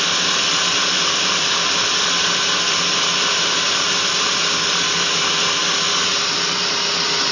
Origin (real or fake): real